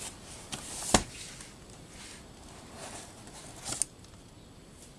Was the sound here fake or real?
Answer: real